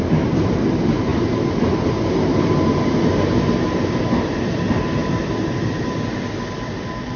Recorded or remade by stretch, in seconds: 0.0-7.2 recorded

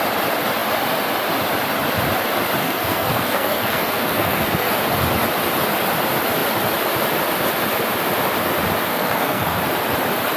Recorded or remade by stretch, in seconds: 0.0-2.6 recorded; 2.6-4.7 remade; 4.7-8.9 recorded; 8.9-9.6 remade; 9.6-10.4 recorded

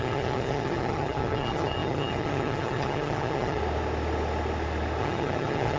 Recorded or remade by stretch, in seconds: 0.0-3.6 remade; 3.6-5.0 recorded; 5.0-5.8 remade

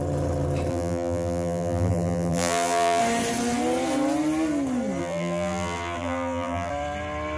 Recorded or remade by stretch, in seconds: 0.0-0.7 recorded; 0.7-3.0 remade; 3.0-5.0 recorded; 5.0-6.7 remade; 6.7-7.4 recorded